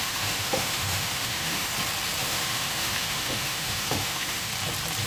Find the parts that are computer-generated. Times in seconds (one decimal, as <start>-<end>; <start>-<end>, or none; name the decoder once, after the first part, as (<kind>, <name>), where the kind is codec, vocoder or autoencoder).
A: 0.0-1.7 (autoencoder, DAC-VAE); 2.2-4.5